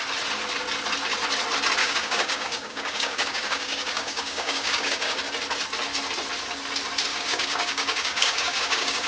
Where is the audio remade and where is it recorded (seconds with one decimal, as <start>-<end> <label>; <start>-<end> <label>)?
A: 0.0-1.8 recorded; 1.8-5.2 remade; 5.2-7.1 recorded; 7.1-9.1 remade